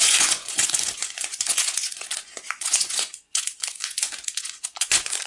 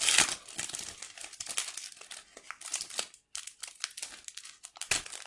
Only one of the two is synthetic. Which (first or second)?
first